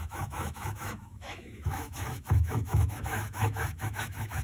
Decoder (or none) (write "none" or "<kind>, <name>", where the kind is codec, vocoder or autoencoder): autoencoder, DAC-VAE